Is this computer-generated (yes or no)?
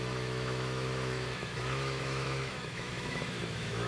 yes